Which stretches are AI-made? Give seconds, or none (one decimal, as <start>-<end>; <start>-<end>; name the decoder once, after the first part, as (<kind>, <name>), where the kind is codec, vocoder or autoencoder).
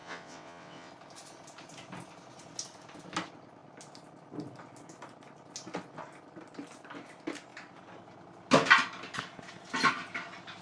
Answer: 0.0-0.9 (vocoder, WaveNeXt)